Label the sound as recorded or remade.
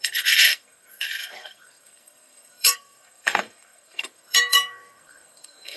remade